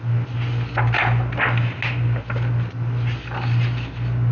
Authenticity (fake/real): real